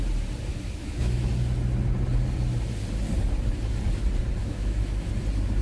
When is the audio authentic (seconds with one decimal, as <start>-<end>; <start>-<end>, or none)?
0.0-0.5; 1.3-4.4; 5.1-5.6